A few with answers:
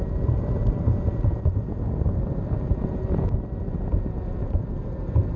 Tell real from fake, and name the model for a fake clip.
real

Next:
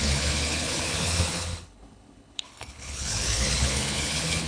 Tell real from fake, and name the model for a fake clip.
fake, codec, HILCodec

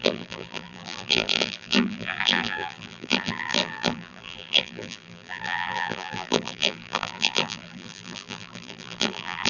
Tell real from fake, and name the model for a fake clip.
fake, vocoder, BigVGAN v2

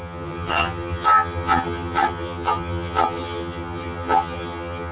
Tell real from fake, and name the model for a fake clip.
fake, vocoder, HiFi-GAN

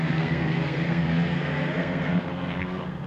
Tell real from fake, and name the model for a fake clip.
fake, codec, SNAC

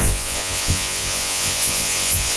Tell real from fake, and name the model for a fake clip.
fake, vocoder, Vocos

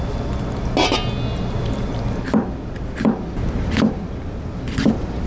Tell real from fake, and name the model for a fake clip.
real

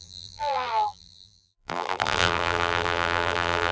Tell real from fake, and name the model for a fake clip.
fake, vocoder, BigVGAN v2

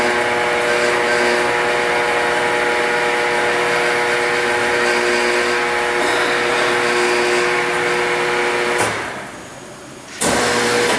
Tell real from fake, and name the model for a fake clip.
real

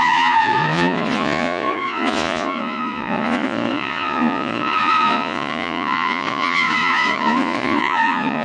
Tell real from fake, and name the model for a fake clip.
fake, vocoder, Vocos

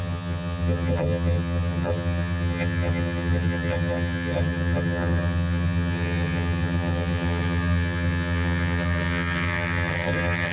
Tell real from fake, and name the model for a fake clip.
fake, vocoder, HiFi-GAN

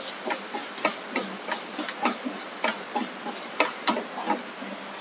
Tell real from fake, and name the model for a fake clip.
real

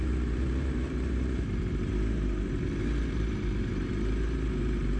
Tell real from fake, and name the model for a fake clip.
fake, vocoder, BigVGAN v2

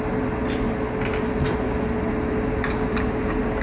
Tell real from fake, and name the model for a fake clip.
real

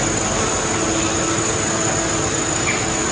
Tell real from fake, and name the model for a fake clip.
real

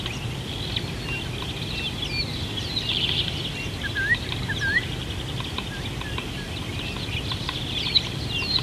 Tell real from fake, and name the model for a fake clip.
real